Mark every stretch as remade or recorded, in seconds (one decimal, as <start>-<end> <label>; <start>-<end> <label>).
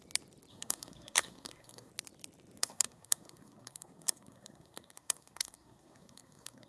0.0-0.5 recorded; 0.5-1.9 remade; 1.9-2.6 recorded; 2.6-6.7 remade